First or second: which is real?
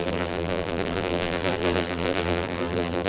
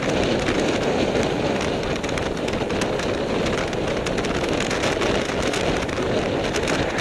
second